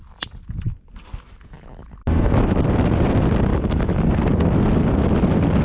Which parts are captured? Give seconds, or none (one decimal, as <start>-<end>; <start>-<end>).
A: 0.0-3.5; 4.1-5.6